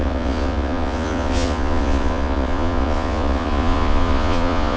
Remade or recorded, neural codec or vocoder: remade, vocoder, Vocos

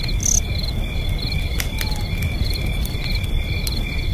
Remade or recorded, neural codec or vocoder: recorded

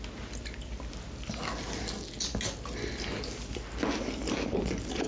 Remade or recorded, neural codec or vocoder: recorded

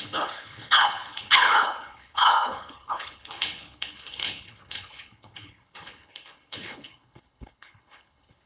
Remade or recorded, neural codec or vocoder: remade, codec, HILCodec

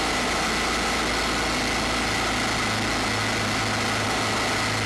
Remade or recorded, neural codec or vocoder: recorded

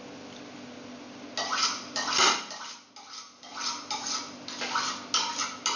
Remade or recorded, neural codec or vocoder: recorded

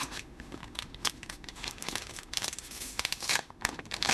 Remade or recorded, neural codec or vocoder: remade, autoencoder, DAC-VAE